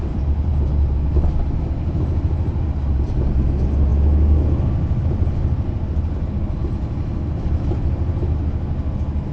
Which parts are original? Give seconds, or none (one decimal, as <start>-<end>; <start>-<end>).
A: 0.0-9.3